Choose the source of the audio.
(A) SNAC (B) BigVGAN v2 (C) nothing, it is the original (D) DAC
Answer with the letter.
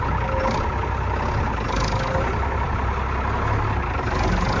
C